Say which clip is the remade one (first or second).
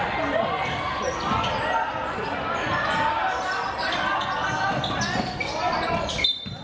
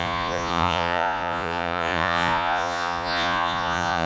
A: second